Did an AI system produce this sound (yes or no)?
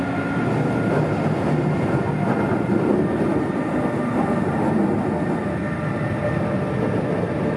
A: no